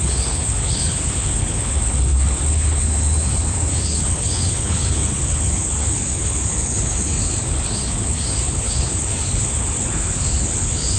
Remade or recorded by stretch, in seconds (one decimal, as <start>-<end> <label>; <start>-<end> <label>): 0.0-11.0 remade